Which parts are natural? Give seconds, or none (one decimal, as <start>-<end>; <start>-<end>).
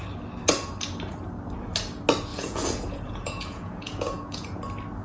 0.0-2.3; 4.6-5.0